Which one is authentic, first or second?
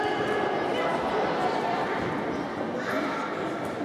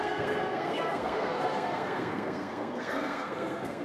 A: first